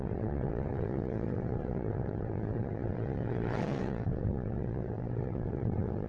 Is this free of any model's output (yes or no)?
no